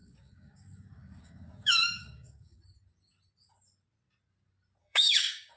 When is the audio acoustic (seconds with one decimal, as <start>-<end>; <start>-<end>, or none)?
2.6-4.8